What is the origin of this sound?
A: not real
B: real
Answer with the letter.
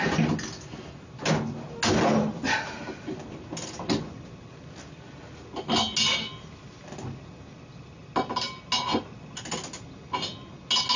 B